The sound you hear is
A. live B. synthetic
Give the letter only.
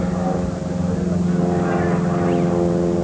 A